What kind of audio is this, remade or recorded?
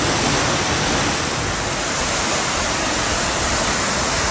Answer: recorded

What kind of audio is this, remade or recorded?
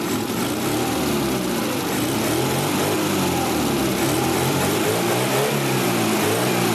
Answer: recorded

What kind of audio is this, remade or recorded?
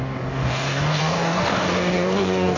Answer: remade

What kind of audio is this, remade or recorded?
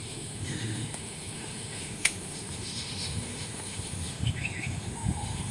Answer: remade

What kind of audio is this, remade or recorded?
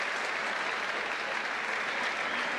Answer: recorded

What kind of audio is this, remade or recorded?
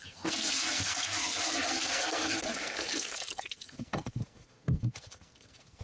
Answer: remade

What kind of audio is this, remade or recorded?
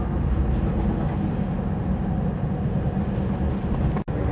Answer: recorded